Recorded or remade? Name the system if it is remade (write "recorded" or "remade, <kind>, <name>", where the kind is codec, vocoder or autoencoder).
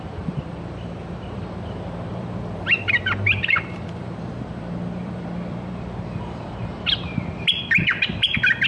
remade, vocoder, BigVGAN v2